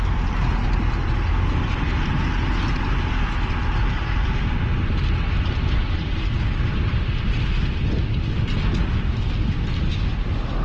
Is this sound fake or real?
real